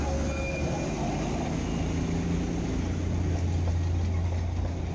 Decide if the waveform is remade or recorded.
recorded